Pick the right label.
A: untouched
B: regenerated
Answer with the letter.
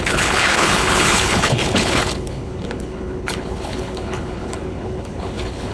B